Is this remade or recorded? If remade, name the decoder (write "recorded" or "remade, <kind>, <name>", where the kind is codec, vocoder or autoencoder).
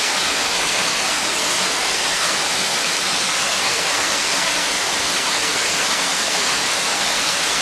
remade, codec, SNAC